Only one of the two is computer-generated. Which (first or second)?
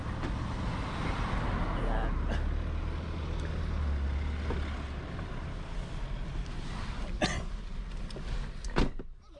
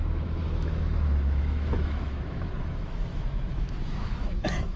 second